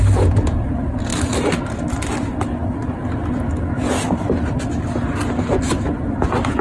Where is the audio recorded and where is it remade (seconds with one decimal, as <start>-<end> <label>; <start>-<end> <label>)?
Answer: 0.0-6.6 recorded